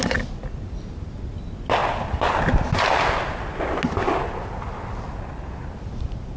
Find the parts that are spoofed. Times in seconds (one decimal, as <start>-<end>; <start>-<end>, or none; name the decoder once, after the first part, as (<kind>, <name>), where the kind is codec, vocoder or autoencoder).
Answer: none

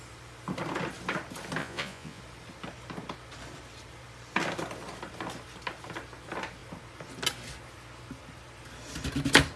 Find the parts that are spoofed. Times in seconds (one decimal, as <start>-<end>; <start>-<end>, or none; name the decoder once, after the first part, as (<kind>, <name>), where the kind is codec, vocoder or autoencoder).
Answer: 1.6-2.2 (vocoder, Vocos)